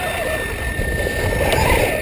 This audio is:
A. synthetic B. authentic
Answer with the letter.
A